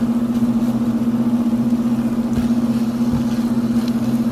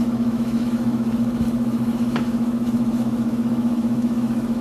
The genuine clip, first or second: first